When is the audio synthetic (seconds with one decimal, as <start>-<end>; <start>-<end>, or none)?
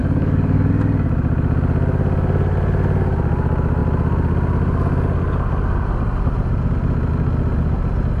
0.0-0.7